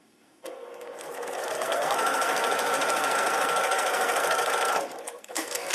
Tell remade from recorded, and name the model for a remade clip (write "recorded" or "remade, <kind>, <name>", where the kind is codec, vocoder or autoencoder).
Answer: remade, codec, SNAC